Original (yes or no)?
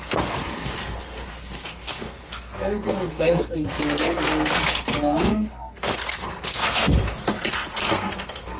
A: no